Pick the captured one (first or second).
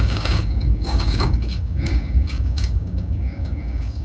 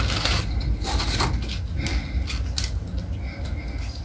second